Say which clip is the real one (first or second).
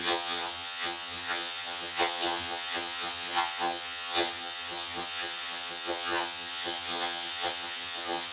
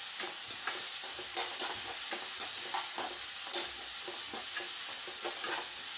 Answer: second